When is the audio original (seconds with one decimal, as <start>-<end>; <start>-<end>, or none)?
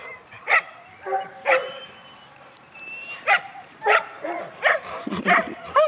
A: 0.7-1.6; 5.1-5.9